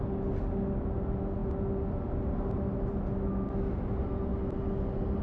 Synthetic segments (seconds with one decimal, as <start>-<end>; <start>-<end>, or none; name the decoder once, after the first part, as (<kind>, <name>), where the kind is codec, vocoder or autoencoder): none